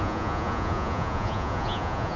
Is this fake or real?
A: fake